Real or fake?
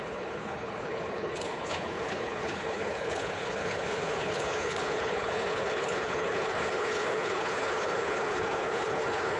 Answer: fake